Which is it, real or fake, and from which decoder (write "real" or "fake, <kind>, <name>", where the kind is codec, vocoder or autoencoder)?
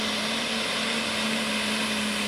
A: real